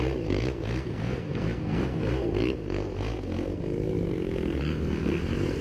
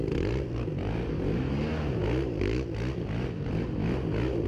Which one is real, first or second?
second